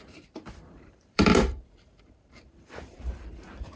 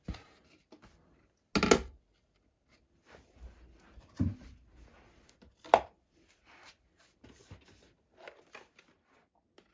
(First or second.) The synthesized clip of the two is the first